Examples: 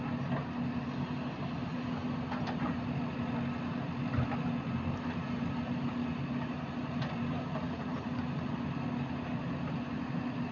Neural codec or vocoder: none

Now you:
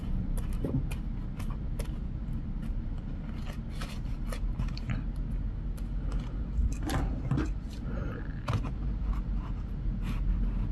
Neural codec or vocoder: none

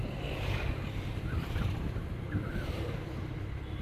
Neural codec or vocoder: vocoder, BigVGAN v2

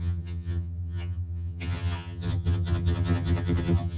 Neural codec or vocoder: vocoder, HiFi-GAN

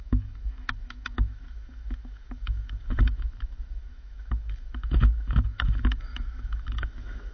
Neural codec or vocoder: autoencoder, DAC-VAE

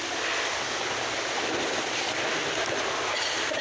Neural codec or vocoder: none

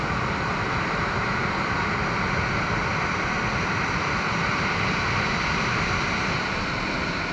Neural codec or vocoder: none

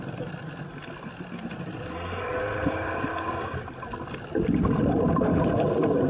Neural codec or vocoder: none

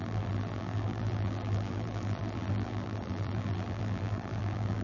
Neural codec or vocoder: vocoder, BigVGAN v2